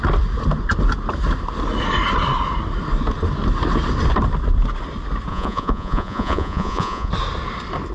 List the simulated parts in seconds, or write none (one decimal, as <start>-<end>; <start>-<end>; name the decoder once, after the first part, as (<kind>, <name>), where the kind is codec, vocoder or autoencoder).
5.3-7.1 (vocoder, Vocos)